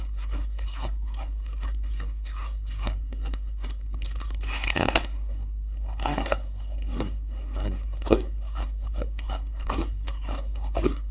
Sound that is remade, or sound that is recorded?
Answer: remade